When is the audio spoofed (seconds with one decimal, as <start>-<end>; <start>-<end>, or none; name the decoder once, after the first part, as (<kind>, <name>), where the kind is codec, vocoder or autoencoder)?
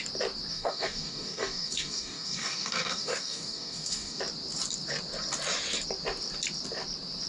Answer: 0.5-4.2 (codec, DAC)